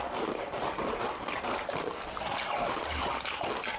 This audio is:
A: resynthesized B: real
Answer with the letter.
A